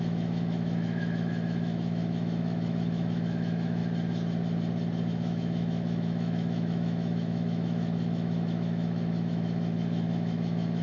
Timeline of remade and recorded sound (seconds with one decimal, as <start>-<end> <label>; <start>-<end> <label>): 0.0-3.8 remade; 3.8-5.1 recorded; 5.1-10.8 remade